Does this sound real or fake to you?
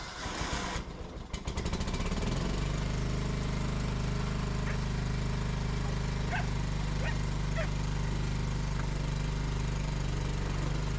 real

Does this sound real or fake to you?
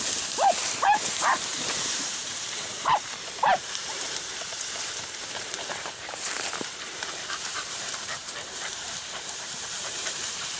fake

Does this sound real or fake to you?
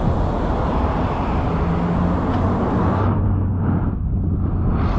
real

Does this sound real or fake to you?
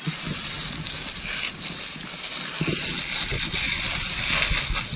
real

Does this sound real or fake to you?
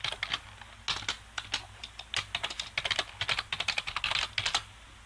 real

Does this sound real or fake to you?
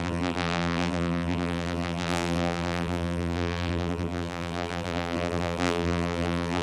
fake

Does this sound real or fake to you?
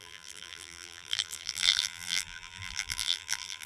fake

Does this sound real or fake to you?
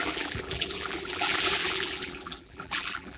fake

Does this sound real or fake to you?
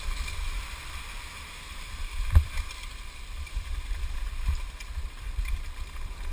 fake